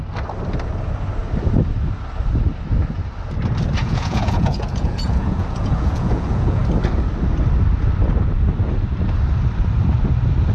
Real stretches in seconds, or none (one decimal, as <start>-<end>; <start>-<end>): 0.0-3.8; 6.6-10.5